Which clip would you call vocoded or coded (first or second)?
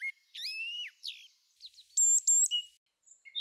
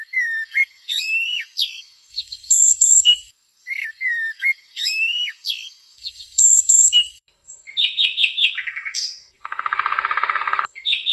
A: second